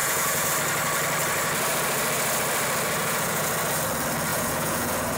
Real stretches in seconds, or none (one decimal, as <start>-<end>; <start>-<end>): 0.5-3.0; 3.5-4.3